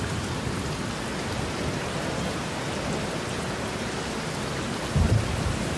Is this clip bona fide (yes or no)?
yes